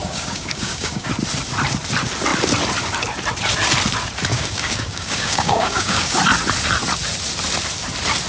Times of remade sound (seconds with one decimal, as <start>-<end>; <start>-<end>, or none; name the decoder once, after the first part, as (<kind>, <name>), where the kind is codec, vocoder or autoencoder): 0.0-1.1 (codec, DAC); 4.3-6.2

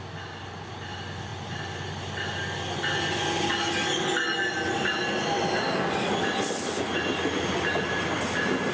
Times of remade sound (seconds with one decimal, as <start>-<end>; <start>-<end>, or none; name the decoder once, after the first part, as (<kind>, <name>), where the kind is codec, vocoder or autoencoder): none